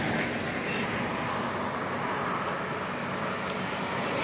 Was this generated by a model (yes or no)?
no